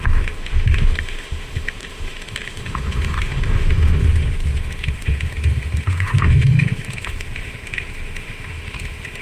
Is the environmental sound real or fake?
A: fake